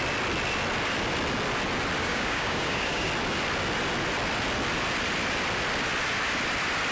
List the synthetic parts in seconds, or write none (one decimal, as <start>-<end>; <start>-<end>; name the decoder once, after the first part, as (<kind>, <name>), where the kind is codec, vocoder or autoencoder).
2.0-3.1 (codec, DAC)